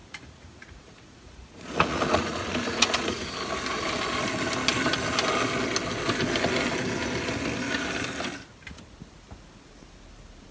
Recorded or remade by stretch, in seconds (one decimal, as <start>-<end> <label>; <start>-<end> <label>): 0.0-3.3 remade; 3.3-10.5 recorded